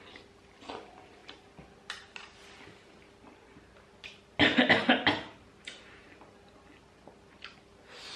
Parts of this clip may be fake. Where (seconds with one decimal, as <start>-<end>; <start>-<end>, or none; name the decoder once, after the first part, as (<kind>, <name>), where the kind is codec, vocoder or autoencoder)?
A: none